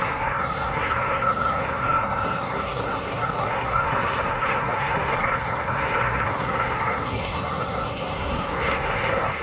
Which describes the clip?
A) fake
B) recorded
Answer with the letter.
A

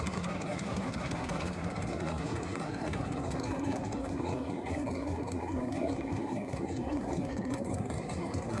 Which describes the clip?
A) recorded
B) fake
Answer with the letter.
B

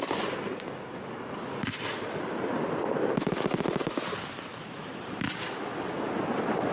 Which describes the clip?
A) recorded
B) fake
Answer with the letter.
A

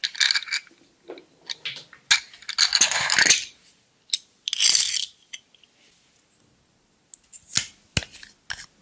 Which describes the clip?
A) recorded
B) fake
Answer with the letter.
A